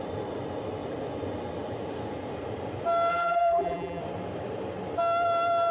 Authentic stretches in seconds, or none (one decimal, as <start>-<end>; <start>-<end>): 0.0-3.1; 4.0-5.7